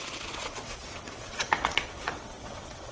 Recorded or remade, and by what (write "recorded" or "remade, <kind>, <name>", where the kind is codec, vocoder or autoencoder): remade, vocoder, WaveNeXt